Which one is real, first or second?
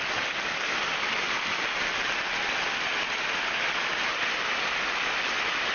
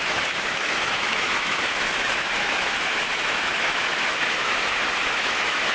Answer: first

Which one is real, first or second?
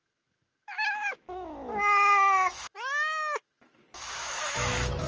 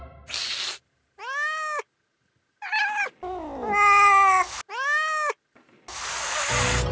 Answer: second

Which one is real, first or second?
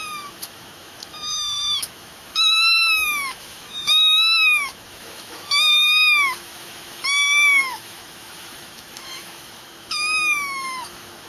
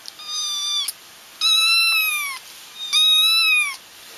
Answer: second